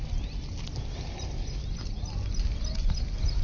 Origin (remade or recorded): recorded